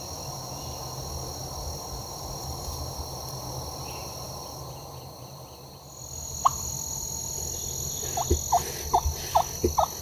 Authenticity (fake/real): real